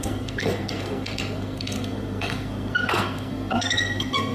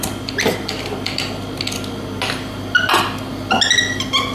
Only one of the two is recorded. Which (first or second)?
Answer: second